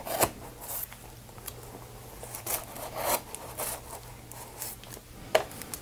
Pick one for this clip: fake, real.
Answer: real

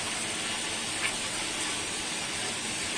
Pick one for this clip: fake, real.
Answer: real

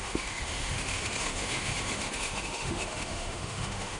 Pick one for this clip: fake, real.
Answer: fake